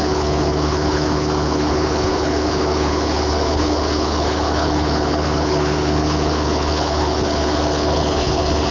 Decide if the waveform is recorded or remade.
remade